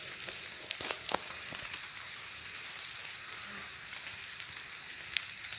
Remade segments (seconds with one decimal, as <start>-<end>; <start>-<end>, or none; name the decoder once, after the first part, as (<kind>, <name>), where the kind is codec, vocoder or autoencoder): none